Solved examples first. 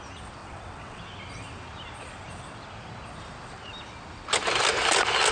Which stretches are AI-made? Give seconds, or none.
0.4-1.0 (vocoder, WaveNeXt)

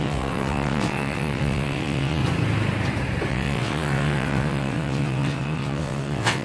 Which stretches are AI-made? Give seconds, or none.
0.0-2.2 (vocoder, WaveNeXt); 3.3-6.4

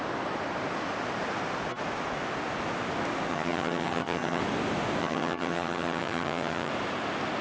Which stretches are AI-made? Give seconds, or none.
3.3-4.4 (vocoder, HiFi-GAN); 5.0-6.7

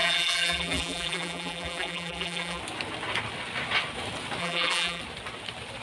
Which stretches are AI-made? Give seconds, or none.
0.0-2.6 (vocoder, BigVGAN v2); 4.4-5.0